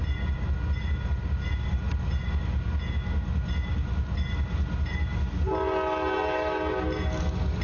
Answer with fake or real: real